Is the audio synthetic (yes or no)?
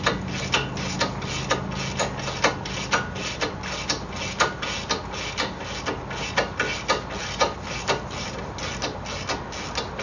no